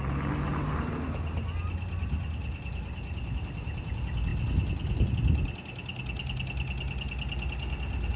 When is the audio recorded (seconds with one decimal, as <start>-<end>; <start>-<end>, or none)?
0.0-8.2

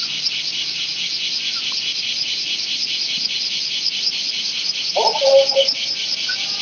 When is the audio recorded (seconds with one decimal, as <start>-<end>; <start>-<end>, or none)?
0.0-6.6

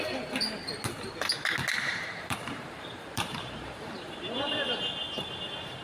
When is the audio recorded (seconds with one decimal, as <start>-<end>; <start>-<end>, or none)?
0.0-1.9; 4.8-5.8

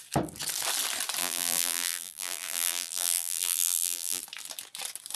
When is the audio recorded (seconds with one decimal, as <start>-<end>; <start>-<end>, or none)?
0.0-1.2; 4.2-5.2

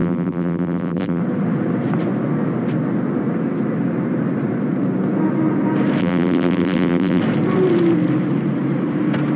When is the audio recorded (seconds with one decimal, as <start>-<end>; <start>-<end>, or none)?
1.2-6.0; 7.2-9.4